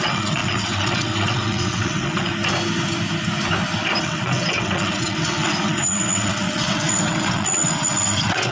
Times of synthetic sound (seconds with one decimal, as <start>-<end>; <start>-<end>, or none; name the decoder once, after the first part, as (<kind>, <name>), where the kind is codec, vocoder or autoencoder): 0.0-2.3 (vocoder, WaveNeXt); 4.0-8.5